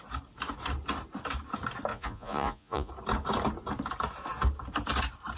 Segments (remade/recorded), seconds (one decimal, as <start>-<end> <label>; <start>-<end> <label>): 0.0-1.9 recorded; 1.9-2.9 remade; 2.9-5.4 recorded